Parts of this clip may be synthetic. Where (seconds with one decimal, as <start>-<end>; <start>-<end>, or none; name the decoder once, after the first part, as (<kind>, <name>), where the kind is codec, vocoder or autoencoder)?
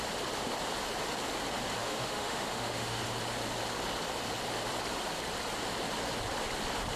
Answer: 1.8-3.0 (autoencoder, DAC-VAE)